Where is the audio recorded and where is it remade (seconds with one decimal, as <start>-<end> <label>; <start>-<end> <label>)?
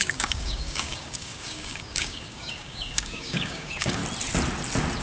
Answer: 0.0-4.0 remade; 4.0-5.0 recorded